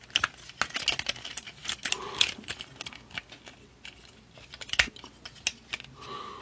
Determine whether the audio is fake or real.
real